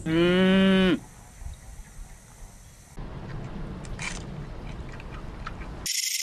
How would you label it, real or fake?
real